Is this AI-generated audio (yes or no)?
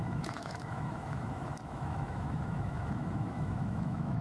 yes